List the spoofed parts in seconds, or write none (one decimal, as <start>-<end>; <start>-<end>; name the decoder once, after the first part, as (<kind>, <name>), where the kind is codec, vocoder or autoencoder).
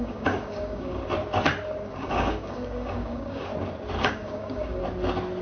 0.0-1.0 (codec, DAC); 1.9-3.5; 4.1-4.8